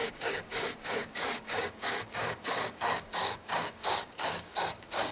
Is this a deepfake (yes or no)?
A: yes